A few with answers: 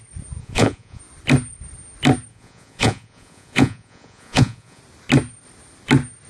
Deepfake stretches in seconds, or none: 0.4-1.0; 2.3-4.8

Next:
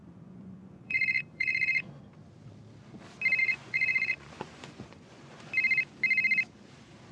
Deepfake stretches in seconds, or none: 0.0-2.0; 3.4-5.5

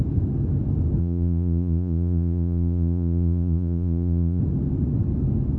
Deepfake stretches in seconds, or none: 1.0-4.4